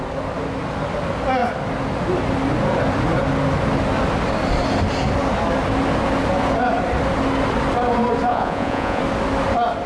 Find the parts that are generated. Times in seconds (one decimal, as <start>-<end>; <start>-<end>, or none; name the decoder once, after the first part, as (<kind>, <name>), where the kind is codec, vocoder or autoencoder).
8.3-9.0 (vocoder, Vocos)